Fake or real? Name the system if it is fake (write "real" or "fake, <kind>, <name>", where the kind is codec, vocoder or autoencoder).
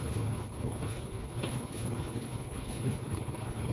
fake, codec, HILCodec